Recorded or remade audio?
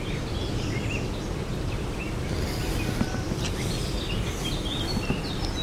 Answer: recorded